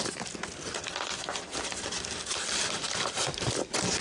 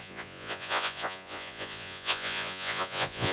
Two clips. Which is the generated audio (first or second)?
second